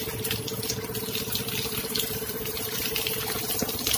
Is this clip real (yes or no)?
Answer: yes